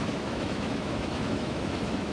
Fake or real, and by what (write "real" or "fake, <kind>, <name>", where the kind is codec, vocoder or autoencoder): fake, autoencoder, DAC-VAE